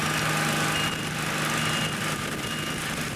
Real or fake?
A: real